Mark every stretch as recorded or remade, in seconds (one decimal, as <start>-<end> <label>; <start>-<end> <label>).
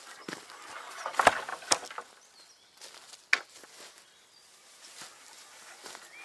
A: 0.0-6.2 recorded